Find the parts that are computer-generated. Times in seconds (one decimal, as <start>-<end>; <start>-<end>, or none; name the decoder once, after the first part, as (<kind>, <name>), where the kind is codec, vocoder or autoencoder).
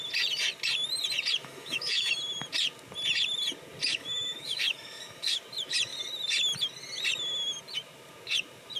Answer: 1.4-2.1 (autoencoder, DAC-VAE); 3.9-5.4